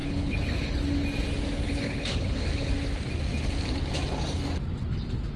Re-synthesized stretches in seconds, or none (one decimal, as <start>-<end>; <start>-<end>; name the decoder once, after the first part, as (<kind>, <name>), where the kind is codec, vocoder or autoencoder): 0.0-0.8 (codec, HILCodec); 1.6-2.7

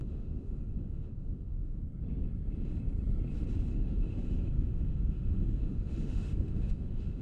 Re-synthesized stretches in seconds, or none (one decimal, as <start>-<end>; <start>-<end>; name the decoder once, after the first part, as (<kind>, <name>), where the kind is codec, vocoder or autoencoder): 0.0-1.8 (autoencoder, DAC-VAE); 3.7-7.2

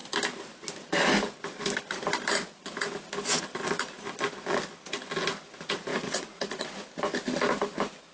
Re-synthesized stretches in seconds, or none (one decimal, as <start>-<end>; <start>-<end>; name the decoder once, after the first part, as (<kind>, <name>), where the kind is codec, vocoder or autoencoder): 5.9-6.7 (vocoder, Vocos)

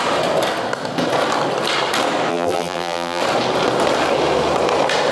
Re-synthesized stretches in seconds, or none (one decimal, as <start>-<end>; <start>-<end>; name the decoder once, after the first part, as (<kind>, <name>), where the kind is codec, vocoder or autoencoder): 2.3-3.2 (vocoder, BigVGAN v2)

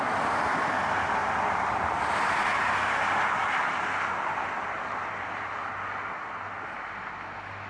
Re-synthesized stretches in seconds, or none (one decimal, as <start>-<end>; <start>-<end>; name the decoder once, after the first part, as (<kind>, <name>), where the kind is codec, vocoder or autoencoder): none